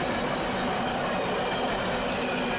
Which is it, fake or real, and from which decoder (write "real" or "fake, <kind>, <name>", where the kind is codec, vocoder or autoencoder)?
real